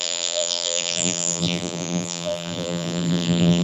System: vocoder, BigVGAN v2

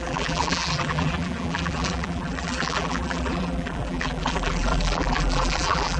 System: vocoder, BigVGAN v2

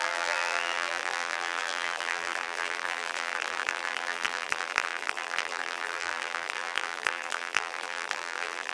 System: vocoder, BigVGAN v2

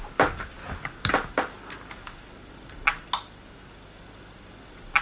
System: none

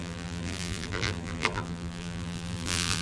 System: vocoder, BigVGAN v2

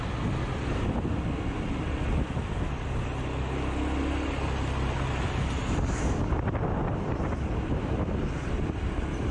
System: none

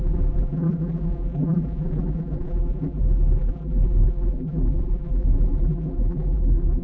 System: vocoder, BigVGAN v2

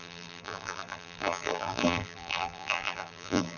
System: vocoder, BigVGAN v2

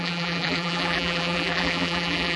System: vocoder, BigVGAN v2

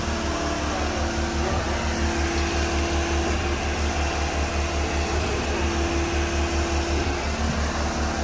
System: none